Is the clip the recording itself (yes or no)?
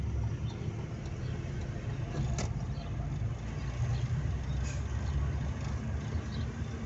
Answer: yes